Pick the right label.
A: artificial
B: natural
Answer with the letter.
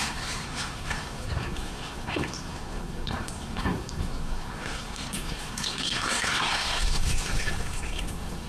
A